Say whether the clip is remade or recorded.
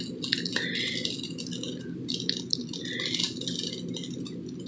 recorded